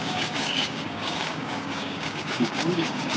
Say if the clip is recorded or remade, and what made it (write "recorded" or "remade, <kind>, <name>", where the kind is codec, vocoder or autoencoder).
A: remade, codec, DAC